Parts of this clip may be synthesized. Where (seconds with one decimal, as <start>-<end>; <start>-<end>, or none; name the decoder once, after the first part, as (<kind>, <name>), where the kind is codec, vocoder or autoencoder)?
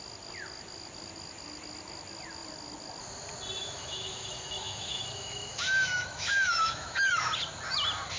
3.6-7.3 (autoencoder, DAC-VAE)